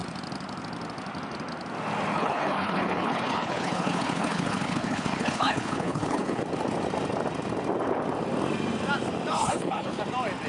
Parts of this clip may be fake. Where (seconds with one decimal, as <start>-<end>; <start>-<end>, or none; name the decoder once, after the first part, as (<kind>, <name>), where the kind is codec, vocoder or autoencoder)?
2.1-6.4 (codec, HILCodec); 9.3-10.0